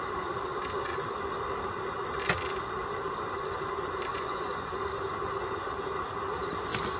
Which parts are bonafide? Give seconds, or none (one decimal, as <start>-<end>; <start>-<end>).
0.0-4.1; 4.7-7.0